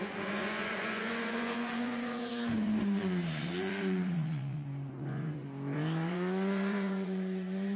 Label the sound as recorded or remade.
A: remade